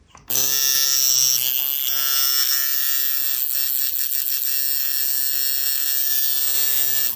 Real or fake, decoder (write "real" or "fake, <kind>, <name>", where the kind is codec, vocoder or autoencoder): real